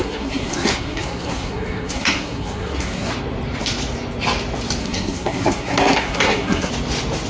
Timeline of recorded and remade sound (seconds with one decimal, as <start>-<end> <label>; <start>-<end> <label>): 0.0-3.1 remade; 3.1-4.8 recorded; 4.8-6.7 remade; 6.7-7.3 recorded